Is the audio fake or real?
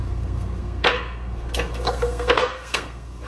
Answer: fake